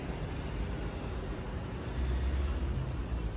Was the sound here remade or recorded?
recorded